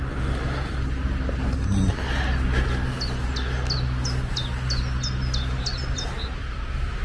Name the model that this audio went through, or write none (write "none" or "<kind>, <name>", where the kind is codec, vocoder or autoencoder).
none